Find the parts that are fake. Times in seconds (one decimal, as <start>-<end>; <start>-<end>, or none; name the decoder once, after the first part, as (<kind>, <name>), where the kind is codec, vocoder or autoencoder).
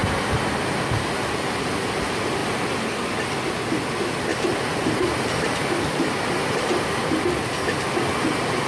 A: 0.0-0.8 (vocoder, BigVGAN v2); 4.3-7.1